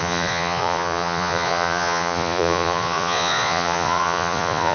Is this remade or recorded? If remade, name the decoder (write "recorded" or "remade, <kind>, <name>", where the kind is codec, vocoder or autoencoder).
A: remade, vocoder, Vocos